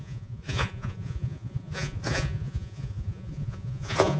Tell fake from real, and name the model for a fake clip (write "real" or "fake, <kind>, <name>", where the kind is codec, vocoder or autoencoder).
fake, vocoder, Vocos